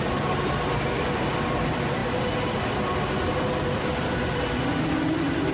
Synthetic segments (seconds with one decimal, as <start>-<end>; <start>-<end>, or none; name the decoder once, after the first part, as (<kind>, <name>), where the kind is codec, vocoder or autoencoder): none

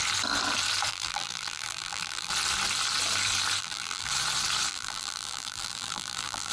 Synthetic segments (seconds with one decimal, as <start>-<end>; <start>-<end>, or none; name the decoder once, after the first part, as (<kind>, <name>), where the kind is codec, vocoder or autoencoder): 0.9-2.3 (vocoder, BigVGAN v2); 3.6-4.1; 4.7-6.5

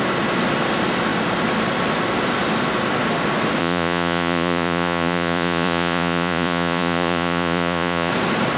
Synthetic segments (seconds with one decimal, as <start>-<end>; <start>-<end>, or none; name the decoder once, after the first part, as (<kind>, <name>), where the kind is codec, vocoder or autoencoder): 3.6-8.1 (vocoder, Vocos)

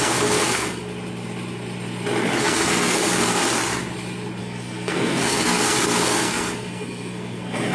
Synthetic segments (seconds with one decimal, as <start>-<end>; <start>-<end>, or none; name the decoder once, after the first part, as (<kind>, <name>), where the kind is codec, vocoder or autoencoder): 0.0-0.8 (codec, SNAC); 2.4-3.4; 4.4-7.7

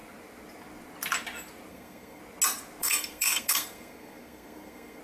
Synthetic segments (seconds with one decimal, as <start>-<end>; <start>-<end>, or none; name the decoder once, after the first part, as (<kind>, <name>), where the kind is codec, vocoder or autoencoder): 1.7-2.2 (codec, SNAC); 2.8-5.0

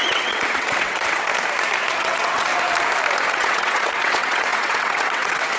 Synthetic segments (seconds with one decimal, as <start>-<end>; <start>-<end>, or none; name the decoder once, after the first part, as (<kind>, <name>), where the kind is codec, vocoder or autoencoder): 0.0-1.3 (vocoder, WaveNeXt); 1.9-2.5; 3.3-5.6

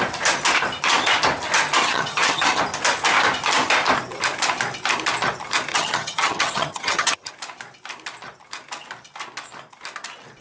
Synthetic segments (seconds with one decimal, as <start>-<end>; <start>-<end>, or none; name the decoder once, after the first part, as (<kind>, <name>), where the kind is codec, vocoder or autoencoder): 1.8-2.6 (vocoder, HiFi-GAN); 5.7-7.3

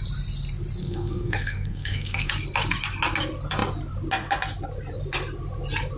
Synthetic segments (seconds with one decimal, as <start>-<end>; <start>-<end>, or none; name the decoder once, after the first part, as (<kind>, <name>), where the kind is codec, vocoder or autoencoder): 0.8-2.3 (codec, SNAC)